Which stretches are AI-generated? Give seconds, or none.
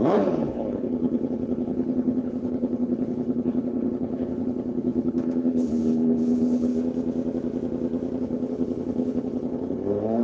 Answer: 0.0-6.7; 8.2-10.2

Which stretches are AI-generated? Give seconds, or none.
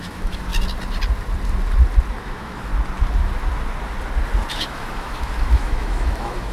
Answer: 0.0-0.5; 2.2-2.7; 4.5-6.5